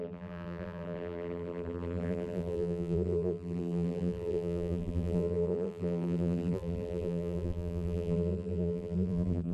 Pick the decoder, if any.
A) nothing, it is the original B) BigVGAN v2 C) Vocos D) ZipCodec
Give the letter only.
B